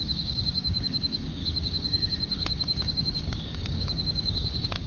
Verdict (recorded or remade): remade